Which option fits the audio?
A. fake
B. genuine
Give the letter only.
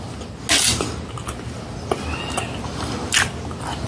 B